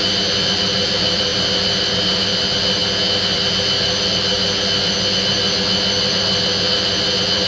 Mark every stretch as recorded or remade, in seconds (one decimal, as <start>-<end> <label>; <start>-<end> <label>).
0.0-7.5 recorded